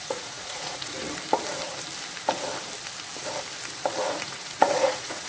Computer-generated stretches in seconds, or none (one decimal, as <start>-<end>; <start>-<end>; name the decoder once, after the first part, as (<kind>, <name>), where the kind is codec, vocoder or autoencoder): 0.0-1.0 (vocoder, Vocos); 4.2-5.3